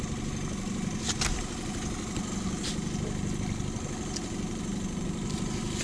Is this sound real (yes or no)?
yes